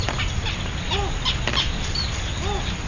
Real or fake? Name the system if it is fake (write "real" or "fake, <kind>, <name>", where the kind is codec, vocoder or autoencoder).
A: real